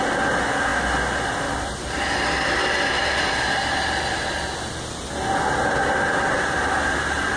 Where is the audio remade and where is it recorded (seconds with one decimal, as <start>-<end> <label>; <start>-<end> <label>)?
0.0-7.4 recorded